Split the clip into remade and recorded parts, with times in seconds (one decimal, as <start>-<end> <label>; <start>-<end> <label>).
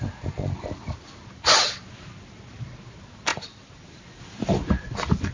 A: 0.0-5.3 recorded